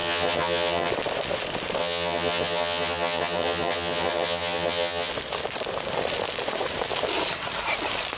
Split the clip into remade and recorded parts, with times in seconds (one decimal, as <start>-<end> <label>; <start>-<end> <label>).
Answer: 0.0-0.9 remade; 0.9-1.8 recorded; 1.8-5.1 remade; 5.1-8.2 recorded